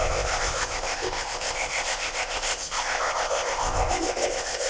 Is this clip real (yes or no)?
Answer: no